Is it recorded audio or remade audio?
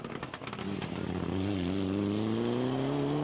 recorded